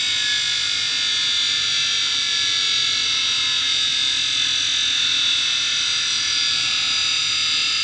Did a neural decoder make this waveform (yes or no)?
no